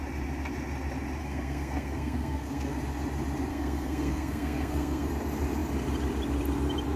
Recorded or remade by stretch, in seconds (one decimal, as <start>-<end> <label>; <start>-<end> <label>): 0.0-1.2 recorded; 1.2-2.8 remade; 2.8-3.5 recorded; 3.5-5.1 remade; 5.1-7.0 recorded